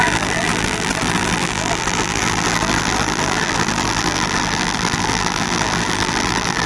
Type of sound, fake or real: fake